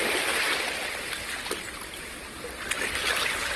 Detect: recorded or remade recorded